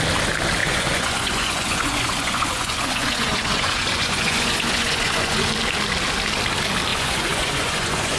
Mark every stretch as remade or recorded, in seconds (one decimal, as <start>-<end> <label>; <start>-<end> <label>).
0.0-0.6 recorded; 0.6-5.5 remade; 5.5-6.9 recorded; 6.9-8.2 remade